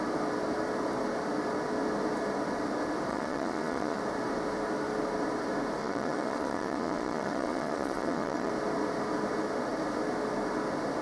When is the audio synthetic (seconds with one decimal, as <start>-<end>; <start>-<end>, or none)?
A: 3.1-4.0; 5.8-8.5